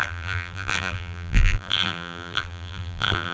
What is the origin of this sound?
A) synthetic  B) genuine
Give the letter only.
A